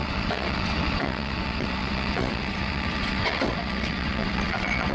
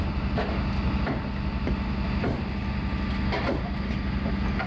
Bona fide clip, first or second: second